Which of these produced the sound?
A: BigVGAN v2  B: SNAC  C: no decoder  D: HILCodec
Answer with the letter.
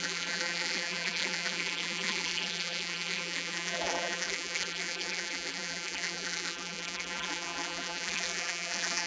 A